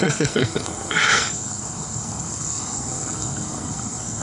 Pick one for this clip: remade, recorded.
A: remade